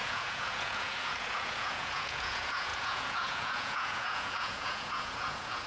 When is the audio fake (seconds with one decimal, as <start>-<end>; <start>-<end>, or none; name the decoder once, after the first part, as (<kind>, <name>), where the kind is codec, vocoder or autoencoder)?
0.0-5.7 (vocoder, Vocos)